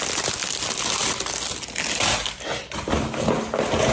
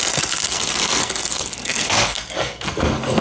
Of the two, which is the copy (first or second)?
second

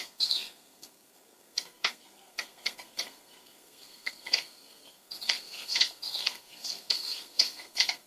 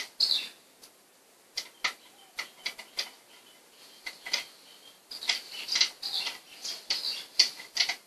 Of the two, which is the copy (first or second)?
first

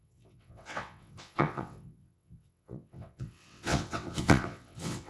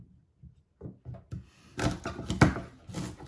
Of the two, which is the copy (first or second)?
first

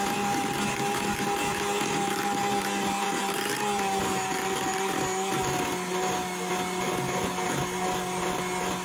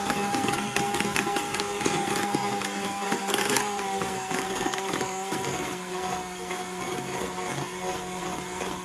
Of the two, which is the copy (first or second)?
second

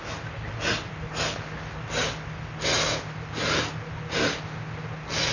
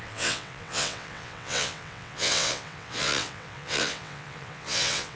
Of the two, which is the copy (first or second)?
second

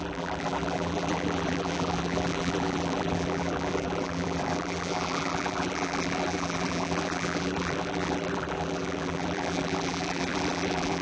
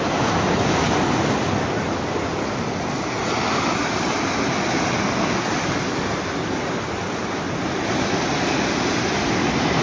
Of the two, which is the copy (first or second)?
first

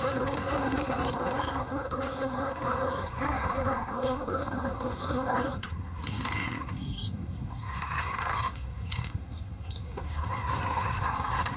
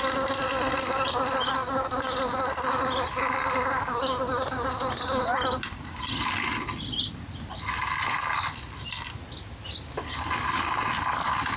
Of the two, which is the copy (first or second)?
first